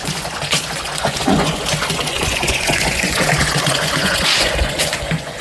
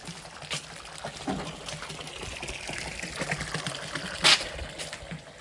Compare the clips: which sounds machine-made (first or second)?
first